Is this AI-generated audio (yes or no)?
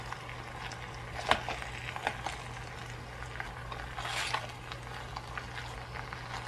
no